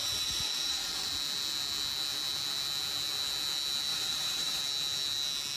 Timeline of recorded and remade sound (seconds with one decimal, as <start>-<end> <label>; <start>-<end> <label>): 0.0-1.1 remade; 1.1-3.9 recorded; 3.9-4.6 remade; 4.6-5.6 recorded